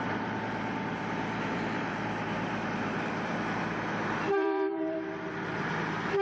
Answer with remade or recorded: remade